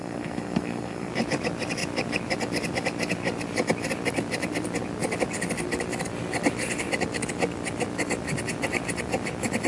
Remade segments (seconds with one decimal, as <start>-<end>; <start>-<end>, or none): 0.0-1.1